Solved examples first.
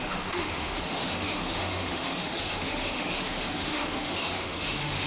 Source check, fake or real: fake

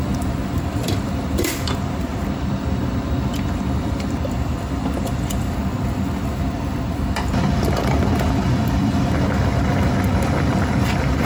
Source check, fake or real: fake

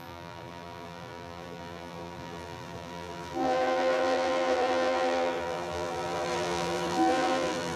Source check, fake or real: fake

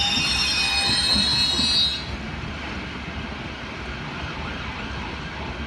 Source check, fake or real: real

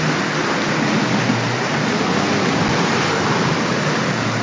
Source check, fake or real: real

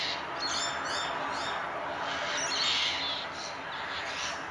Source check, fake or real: real